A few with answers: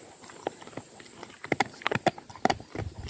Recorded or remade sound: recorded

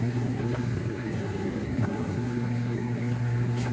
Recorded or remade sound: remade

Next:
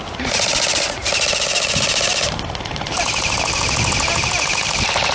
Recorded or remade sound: recorded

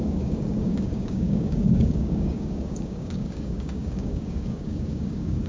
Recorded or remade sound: remade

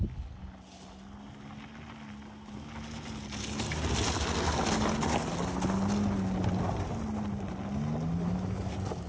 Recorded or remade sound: recorded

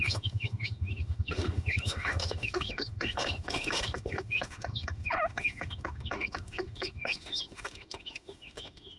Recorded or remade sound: remade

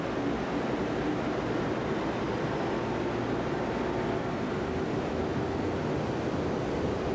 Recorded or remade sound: recorded